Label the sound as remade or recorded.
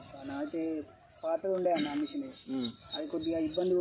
recorded